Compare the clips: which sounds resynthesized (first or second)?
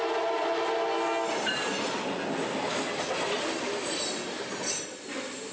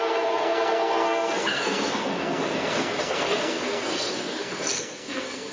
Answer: second